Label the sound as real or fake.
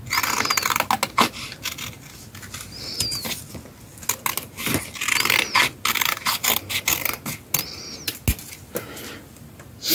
real